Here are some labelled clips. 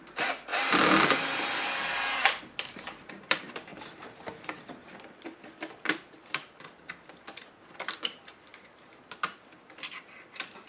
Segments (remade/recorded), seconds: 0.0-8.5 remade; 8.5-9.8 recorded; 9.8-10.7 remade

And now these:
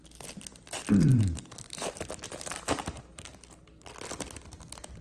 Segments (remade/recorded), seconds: 0.0-1.1 recorded; 1.1-3.9 remade; 3.9-5.0 recorded

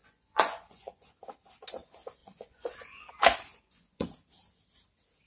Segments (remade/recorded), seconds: 0.0-1.2 remade; 1.2-2.2 recorded; 2.2-3.1 remade; 3.1-3.5 recorded; 3.5-4.1 remade; 4.1-5.3 recorded

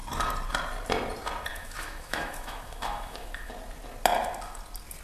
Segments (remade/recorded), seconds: 0.0-1.5 recorded; 1.5-3.5 remade; 3.5-5.0 recorded

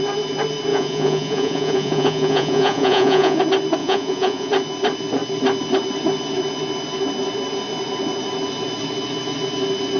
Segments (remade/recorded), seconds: 0.0-0.7 recorded; 0.7-3.4 remade; 3.4-3.8 recorded; 3.8-4.5 remade; 4.5-10.0 recorded